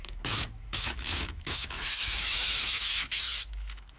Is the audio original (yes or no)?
no